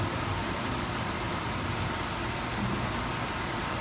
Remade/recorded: recorded